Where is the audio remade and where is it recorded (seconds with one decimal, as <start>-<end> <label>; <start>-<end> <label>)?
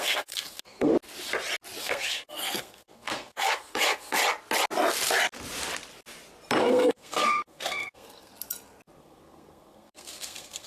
0.0-0.9 remade; 0.9-1.8 recorded; 1.8-4.2 remade; 4.2-6.6 recorded; 6.6-8.3 remade; 8.3-9.0 recorded; 9.0-10.7 remade